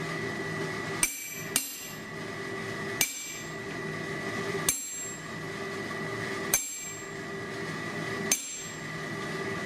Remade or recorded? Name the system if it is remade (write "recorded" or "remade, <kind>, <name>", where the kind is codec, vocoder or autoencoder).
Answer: recorded